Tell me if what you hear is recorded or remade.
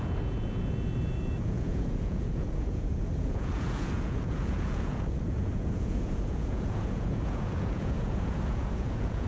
remade